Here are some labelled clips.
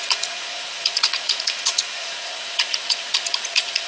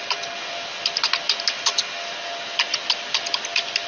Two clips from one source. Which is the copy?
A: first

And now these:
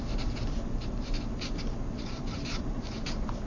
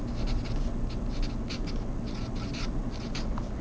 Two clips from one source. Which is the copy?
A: first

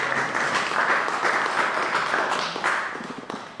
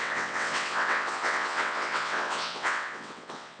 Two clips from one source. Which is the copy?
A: second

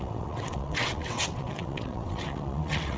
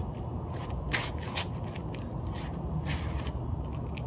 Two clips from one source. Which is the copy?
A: first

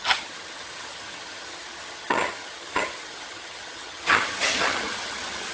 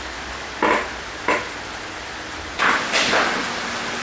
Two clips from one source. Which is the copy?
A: first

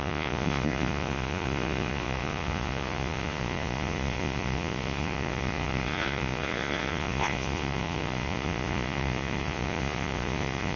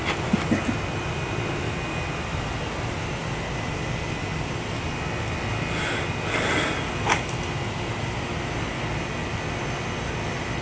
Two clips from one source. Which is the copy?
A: first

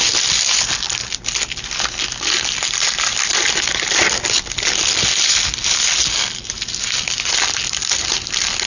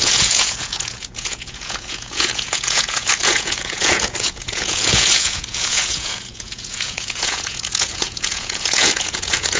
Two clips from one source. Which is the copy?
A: second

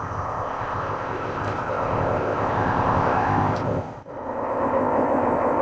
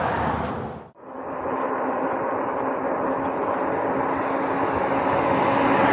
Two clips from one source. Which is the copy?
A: first